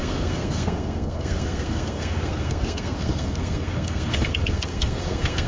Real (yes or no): no